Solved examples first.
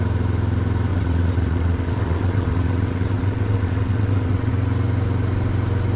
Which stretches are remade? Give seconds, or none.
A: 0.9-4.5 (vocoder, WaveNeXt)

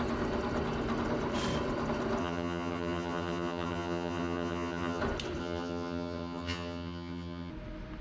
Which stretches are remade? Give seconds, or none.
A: 2.2-5.0 (vocoder, HiFi-GAN); 5.4-7.5

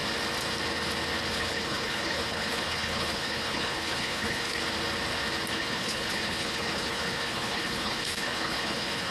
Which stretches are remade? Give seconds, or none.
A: 1.4-4.6 (codec, HILCodec); 5.5-9.1

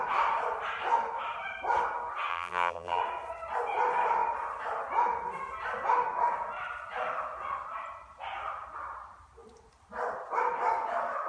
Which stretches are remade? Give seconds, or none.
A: 2.3-3.0 (vocoder, BigVGAN v2)